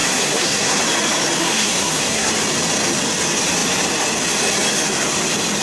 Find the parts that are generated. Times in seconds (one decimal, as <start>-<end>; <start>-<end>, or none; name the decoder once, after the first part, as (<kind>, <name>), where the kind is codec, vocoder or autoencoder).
0.0-0.8 (codec, SNAC); 1.4-2.3